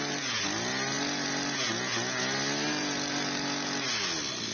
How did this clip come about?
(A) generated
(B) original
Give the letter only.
B